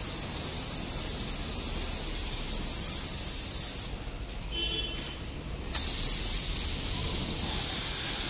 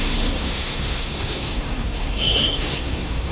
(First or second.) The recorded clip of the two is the first